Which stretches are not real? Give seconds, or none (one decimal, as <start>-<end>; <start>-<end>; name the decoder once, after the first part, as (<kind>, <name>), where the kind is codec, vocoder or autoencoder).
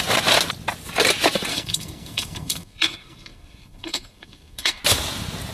1.5-4.8 (codec, SNAC)